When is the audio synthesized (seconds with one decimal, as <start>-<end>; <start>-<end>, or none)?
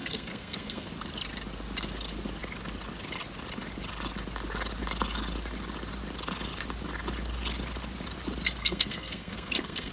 0.0-0.9; 8.6-9.9